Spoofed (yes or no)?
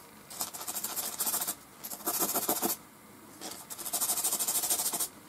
no